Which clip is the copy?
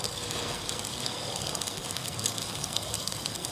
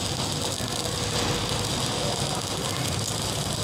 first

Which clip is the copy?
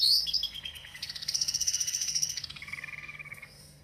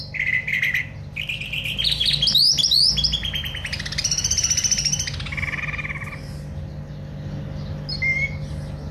first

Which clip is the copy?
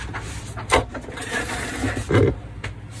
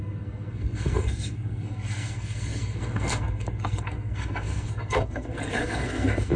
second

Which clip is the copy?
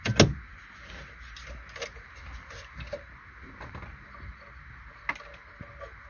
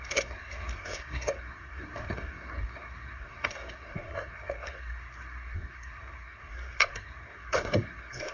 second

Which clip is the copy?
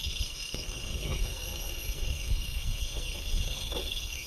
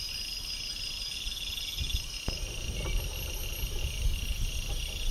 first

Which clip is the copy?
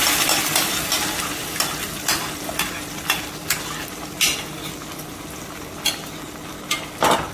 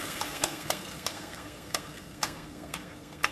second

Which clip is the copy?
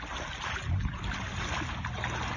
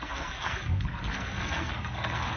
second